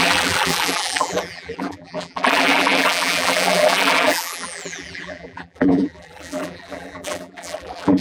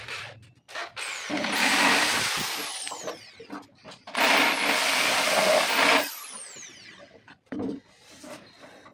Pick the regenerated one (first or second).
first